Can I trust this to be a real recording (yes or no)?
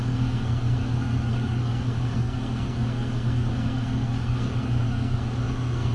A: no